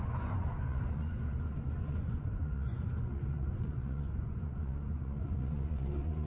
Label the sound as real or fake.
fake